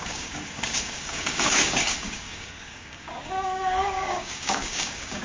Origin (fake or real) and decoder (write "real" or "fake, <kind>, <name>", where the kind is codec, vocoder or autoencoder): fake, codec, DAC